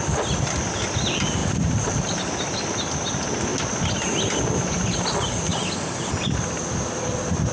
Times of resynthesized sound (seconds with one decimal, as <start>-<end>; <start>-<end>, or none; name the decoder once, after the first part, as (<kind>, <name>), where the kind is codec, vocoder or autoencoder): 1.4-2.2 (vocoder, BigVGAN v2)